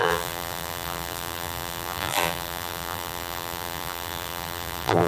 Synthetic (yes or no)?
yes